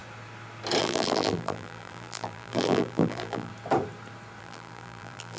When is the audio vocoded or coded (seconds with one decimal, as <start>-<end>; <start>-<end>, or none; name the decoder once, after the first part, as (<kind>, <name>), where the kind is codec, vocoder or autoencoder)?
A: 0.8-3.5 (vocoder, BigVGAN v2); 4.4-5.4